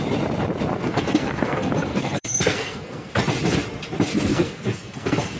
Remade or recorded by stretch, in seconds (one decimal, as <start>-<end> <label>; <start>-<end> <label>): 0.0-0.7 recorded; 0.7-3.1 remade; 3.1-4.3 recorded; 4.3-5.4 remade